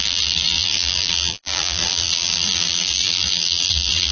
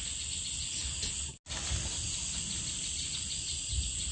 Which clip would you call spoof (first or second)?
first